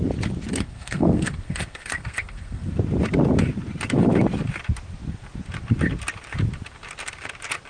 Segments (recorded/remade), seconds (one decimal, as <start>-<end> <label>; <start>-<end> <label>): 0.0-0.5 recorded; 0.5-2.7 remade; 2.7-7.7 recorded